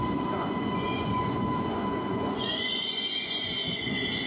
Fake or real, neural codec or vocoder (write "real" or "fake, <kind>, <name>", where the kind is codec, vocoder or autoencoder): fake, vocoder, Vocos